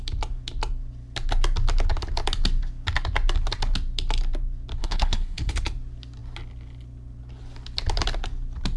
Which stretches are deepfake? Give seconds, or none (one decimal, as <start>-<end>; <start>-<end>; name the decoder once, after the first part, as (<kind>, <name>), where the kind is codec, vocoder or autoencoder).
4.8-5.5 (codec, SNAC)